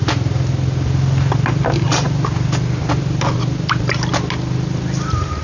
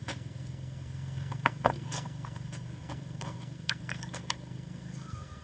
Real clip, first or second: first